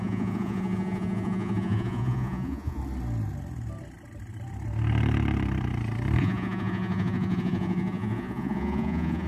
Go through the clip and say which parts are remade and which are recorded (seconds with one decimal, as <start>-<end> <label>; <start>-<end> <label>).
0.0-2.8 remade; 2.8-6.2 recorded; 6.2-9.3 remade